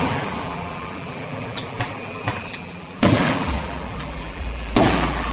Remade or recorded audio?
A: remade